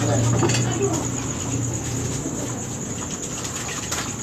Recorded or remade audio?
recorded